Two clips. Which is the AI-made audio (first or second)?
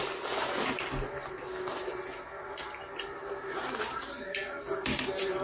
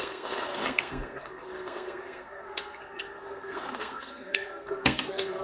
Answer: second